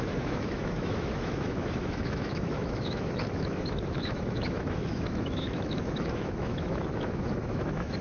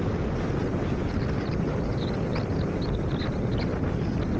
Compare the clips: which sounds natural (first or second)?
second